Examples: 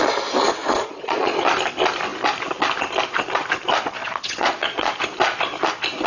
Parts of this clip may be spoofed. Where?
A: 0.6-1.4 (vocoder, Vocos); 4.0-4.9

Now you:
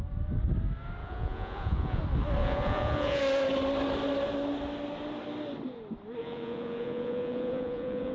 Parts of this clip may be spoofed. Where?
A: 1.0-2.0 (vocoder, Vocos); 2.4-3.2; 6.2-8.1

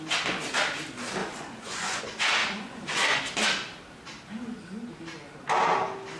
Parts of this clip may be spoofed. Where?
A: 1.2-2.0 (vocoder, Vocos); 2.4-3.2